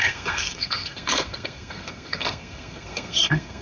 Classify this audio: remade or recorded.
remade